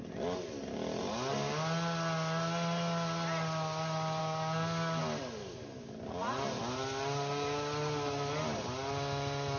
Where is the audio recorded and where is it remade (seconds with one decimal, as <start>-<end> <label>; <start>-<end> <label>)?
0.0-4.2 recorded; 4.2-5.0 remade; 5.0-5.4 recorded; 5.4-5.9 remade; 5.9-9.6 recorded